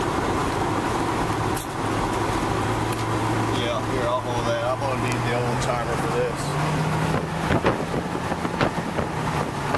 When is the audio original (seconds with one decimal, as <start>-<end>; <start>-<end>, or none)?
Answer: 0.0-9.8